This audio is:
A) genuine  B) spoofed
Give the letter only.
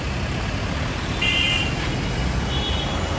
A